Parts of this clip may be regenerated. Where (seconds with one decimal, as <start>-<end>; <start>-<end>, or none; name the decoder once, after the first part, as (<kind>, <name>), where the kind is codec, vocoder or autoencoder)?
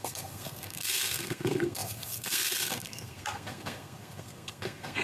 0.0-5.0 (codec, SNAC)